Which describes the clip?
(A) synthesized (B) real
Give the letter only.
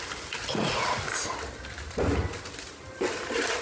B